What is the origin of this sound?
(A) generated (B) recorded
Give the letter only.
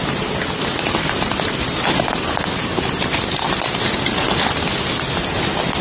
B